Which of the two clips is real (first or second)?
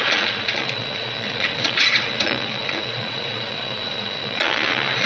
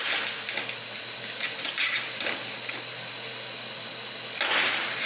second